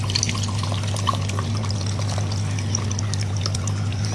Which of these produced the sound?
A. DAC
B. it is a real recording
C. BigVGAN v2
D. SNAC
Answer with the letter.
B